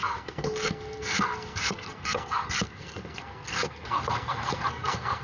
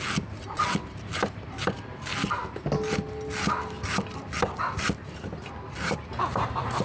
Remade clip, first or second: first